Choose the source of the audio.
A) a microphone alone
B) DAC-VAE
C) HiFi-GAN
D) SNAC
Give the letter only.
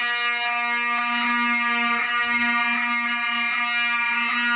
A